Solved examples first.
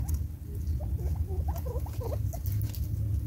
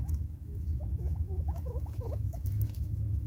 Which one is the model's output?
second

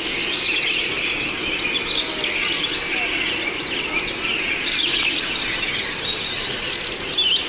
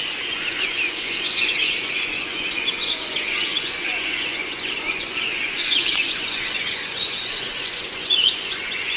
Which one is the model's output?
second